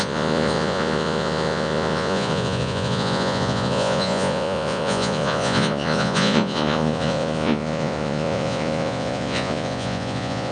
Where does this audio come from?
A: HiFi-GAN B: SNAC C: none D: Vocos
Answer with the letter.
D